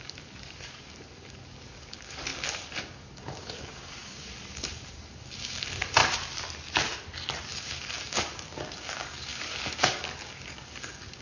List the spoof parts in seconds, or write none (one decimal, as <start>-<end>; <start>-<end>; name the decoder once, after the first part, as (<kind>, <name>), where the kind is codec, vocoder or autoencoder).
0.0-6.0 (codec, DAC); 7.5-11.2